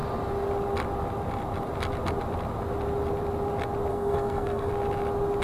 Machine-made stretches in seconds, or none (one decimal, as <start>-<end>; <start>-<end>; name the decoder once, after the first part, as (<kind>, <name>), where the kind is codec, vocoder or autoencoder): 3.9-4.7 (codec, SNAC)